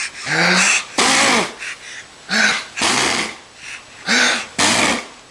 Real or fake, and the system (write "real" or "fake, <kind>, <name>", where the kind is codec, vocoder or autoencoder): real